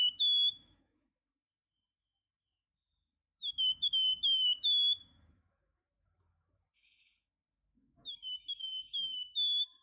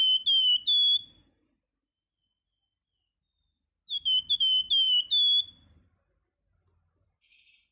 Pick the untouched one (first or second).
second